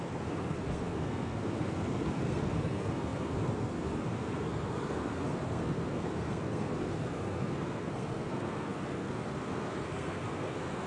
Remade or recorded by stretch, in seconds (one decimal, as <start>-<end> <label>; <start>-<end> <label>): 0.0-10.9 remade